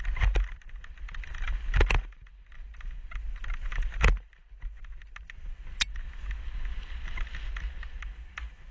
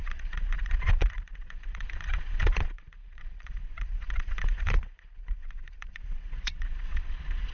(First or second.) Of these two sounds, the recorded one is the first